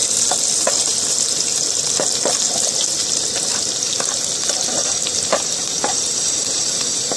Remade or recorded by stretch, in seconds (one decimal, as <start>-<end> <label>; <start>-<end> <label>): 0.0-7.2 remade